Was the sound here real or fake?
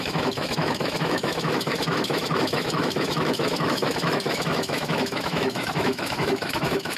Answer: fake